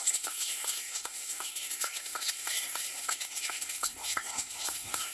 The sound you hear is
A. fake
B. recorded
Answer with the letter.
A